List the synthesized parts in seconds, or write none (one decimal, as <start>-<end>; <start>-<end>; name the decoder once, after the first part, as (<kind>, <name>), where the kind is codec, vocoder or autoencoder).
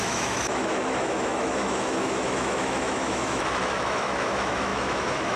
0.0-5.4 (autoencoder, DAC-VAE)